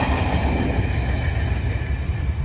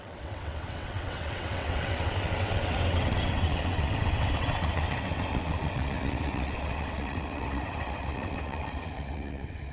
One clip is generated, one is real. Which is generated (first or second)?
second